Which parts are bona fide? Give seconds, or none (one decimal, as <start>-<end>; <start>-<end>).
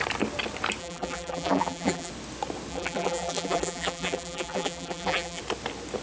0.0-0.8; 2.1-2.7; 5.4-6.0